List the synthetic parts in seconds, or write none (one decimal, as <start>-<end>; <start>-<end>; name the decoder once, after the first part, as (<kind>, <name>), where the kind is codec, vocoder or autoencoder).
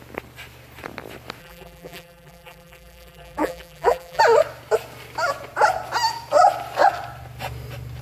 1.4-4.2 (vocoder, BigVGAN v2)